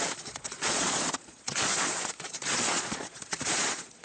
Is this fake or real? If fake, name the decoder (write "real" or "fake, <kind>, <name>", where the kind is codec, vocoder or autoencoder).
fake, vocoder, Vocos